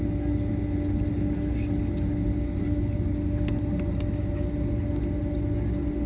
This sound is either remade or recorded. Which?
recorded